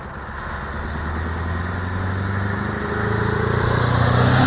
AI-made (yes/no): no